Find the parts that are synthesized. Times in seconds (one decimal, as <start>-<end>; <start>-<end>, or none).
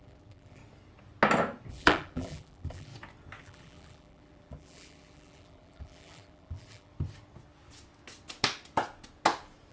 0.0-0.6; 1.7-2.9; 3.4-6.9